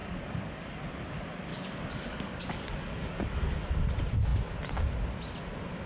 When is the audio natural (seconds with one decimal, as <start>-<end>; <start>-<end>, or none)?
0.8-1.5; 3.7-5.9